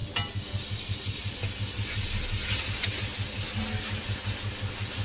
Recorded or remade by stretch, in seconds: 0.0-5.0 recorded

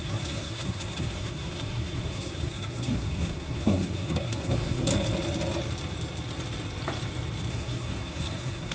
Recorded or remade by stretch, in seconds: 0.0-4.9 remade; 4.9-7.5 recorded; 7.5-8.7 remade